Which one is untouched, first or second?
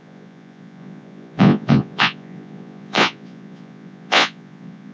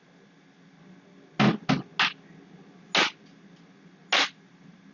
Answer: second